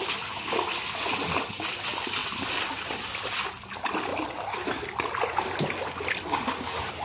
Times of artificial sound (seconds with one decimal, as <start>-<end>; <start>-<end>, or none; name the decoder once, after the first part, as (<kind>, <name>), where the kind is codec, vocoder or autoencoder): none